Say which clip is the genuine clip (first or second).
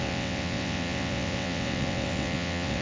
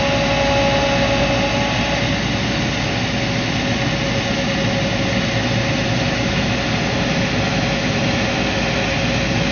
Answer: second